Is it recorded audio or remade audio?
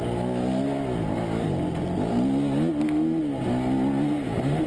recorded